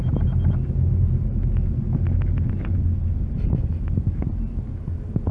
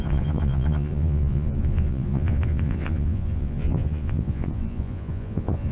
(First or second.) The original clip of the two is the first